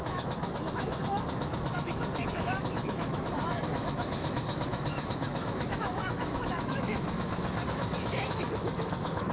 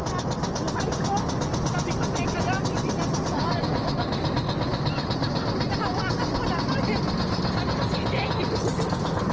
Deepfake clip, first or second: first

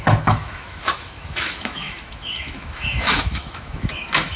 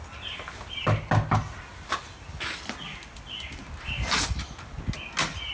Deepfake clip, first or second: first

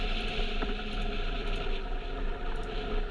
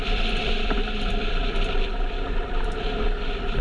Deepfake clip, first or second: second